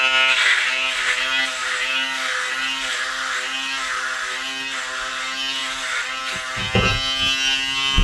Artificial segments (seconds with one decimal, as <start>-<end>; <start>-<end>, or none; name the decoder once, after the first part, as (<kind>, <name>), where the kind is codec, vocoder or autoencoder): 1.9-2.5 (codec, DAC)